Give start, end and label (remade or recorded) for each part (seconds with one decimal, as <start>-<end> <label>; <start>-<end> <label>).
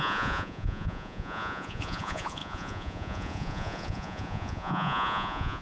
0.0-5.6 remade